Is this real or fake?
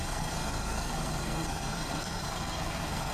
fake